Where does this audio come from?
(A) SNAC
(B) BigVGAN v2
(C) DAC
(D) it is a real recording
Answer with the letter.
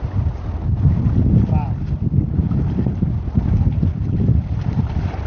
D